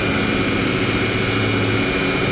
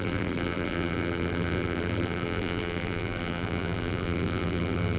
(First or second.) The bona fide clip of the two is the first